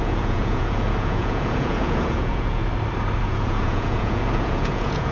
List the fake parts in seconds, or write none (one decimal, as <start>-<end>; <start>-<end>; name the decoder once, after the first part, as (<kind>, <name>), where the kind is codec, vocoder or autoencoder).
0.0-2.6 (vocoder, Vocos); 3.2-5.1